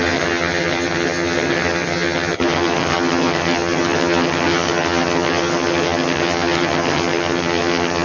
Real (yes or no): no